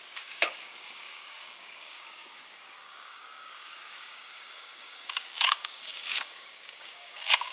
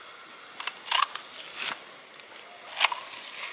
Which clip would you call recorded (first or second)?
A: second